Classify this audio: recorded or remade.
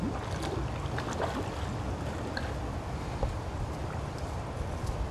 recorded